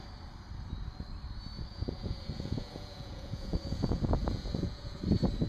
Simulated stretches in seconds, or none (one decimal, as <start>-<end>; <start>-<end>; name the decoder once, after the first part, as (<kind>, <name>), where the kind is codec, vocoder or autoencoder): 1.7-5.0 (vocoder, Vocos)